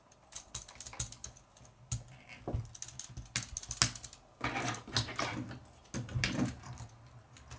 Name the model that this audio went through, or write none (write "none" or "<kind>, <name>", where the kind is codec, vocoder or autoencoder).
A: none